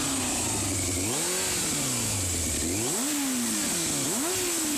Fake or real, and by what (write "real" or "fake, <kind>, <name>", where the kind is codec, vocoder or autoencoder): real